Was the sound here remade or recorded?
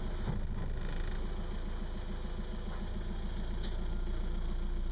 recorded